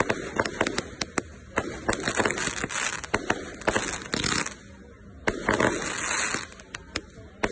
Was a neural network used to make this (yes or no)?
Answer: no